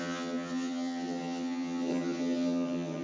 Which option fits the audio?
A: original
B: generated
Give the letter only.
B